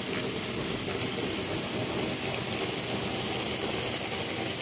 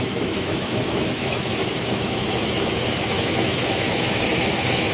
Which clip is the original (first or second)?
first